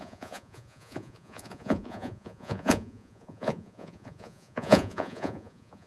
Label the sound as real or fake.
fake